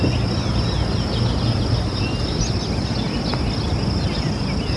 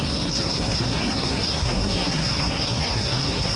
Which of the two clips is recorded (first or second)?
first